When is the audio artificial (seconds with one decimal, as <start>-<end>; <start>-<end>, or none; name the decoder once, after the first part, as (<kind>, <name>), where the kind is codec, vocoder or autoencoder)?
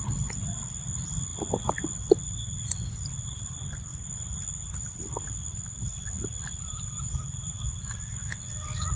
6.6-7.5 (vocoder, BigVGAN v2)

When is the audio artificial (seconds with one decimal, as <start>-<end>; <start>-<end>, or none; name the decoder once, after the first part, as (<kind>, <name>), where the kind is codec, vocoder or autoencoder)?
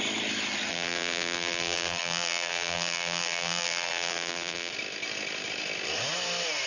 0.7-4.7 (vocoder, BigVGAN v2)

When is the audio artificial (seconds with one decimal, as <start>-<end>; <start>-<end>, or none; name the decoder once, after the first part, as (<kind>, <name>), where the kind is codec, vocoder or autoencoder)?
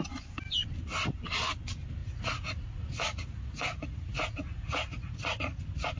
2.0-5.6 (vocoder, Vocos)